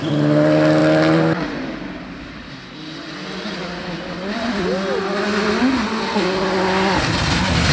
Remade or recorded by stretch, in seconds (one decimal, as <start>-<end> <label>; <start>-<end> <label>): 0.0-7.7 recorded